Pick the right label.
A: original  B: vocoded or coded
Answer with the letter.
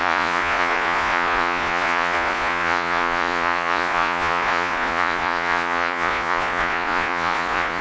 B